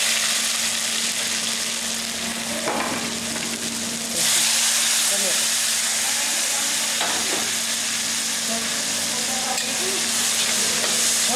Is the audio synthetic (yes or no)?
no